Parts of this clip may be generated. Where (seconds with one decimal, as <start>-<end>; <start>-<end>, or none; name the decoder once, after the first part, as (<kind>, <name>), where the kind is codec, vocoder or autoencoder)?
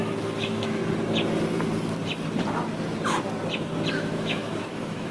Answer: 0.0-0.8 (autoencoder, DAC-VAE); 3.9-5.1